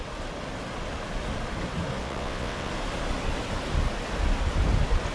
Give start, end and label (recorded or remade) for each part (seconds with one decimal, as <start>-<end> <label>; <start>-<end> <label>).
0.0-2.0 recorded; 2.0-2.7 remade; 2.7-5.1 recorded